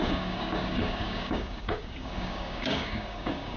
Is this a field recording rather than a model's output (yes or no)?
no